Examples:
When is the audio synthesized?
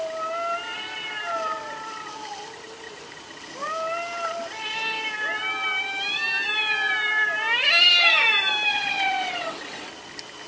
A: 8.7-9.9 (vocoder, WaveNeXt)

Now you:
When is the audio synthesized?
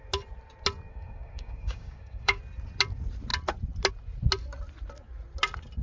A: 0.9-2.4 (codec, DAC)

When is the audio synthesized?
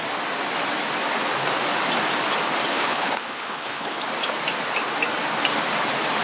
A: 2.7-4.0 (codec, HILCodec)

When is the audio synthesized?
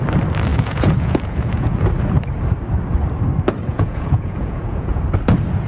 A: 0.5-1.9 (vocoder, Vocos); 3.7-5.0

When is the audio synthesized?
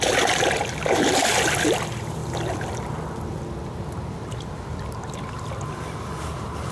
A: none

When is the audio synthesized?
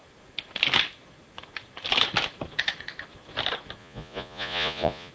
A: 3.8-5.1 (vocoder, Vocos)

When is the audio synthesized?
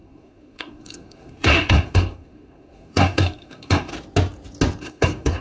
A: 0.0-3.9 (codec, SNAC); 4.8-5.4